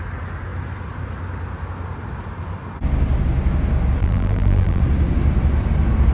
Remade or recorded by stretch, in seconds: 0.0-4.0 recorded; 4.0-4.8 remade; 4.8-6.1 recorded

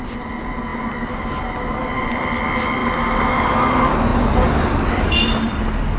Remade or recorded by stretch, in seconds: 0.0-1.8 recorded; 1.8-2.4 remade; 2.4-2.8 recorded; 2.8-3.4 remade; 3.4-4.1 recorded; 4.1-5.6 remade; 5.6-6.0 recorded

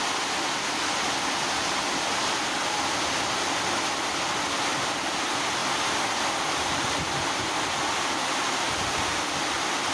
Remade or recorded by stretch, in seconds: 0.0-9.9 recorded

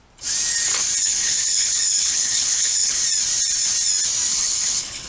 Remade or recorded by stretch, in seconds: 0.0-1.0 recorded; 1.0-3.0 remade; 3.0-4.3 recorded; 4.3-5.1 remade

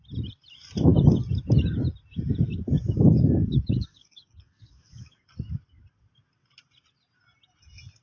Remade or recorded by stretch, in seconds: 0.0-3.4 recorded; 3.4-5.3 remade; 5.3-8.0 recorded

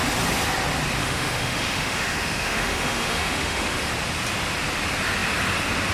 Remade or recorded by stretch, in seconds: 0.0-1.0 recorded; 1.0-3.9 remade; 3.9-5.9 recorded

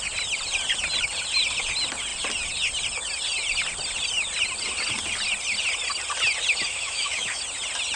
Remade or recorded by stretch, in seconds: 0.0-6.7 recorded; 6.7-7.4 remade; 7.4-8.0 recorded